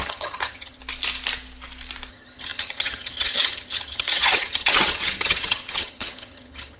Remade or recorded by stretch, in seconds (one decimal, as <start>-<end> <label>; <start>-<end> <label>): 0.0-0.8 remade; 0.8-2.1 recorded; 2.1-6.8 remade